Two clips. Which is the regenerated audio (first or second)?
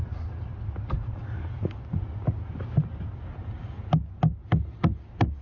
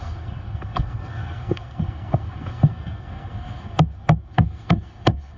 second